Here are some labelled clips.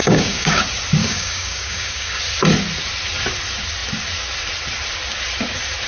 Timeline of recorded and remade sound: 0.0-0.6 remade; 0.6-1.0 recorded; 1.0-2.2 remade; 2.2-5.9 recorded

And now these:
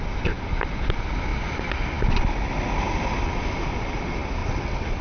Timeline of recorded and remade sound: 0.0-4.4 recorded; 4.4-5.0 remade

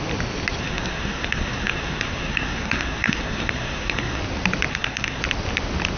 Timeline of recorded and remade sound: 0.0-0.6 recorded; 0.6-4.2 remade; 4.2-4.7 recorded; 4.7-5.2 remade; 5.2-6.0 recorded

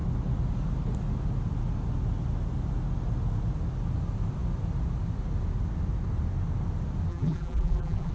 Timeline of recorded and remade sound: 0.0-7.1 recorded; 7.1-8.1 remade